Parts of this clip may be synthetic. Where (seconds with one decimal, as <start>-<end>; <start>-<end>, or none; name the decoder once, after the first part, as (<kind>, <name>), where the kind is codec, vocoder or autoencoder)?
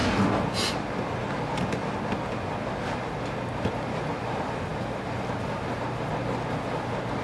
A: none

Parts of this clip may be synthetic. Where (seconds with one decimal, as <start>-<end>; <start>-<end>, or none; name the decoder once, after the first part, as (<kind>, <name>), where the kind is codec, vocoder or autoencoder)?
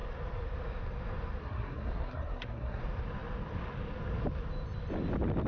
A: 1.4-2.8 (codec, SNAC)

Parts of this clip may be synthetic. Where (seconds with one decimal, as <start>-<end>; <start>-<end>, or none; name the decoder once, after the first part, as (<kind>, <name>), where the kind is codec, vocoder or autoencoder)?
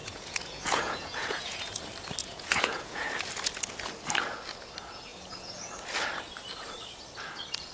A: 0.0-1.8 (vocoder, Vocos); 2.2-3.1; 5.1-5.7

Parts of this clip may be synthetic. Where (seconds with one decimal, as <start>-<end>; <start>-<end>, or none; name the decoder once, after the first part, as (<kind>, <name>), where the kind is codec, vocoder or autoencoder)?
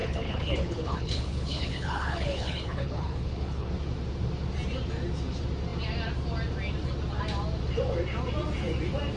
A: 0.0-3.7 (codec, HILCodec)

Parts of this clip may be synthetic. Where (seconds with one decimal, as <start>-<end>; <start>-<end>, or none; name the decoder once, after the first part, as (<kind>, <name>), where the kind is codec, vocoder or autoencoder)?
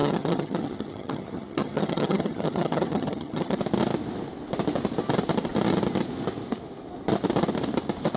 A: 0.0-3.6 (vocoder, HiFi-GAN)